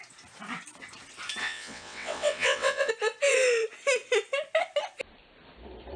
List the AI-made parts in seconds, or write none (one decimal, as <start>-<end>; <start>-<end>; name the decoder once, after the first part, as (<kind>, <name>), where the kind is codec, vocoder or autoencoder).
1.4-2.9 (vocoder, WaveNeXt)